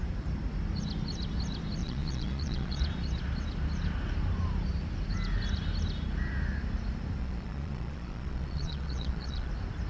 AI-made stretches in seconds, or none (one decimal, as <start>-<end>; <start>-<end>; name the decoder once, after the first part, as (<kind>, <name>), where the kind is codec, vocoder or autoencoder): 1.8-2.8 (vocoder, Vocos); 7.2-9.5